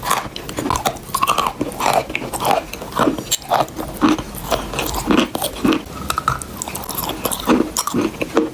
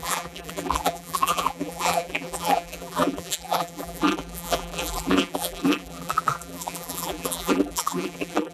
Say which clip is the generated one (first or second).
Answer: second